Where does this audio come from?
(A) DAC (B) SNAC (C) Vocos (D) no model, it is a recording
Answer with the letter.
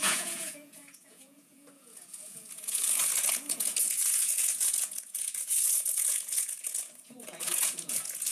C